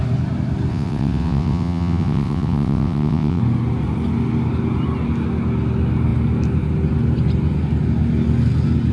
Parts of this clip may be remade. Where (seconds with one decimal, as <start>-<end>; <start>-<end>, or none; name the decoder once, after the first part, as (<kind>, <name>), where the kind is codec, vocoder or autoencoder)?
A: 0.7-3.4 (vocoder, WaveNeXt)